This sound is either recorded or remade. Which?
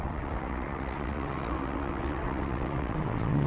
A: remade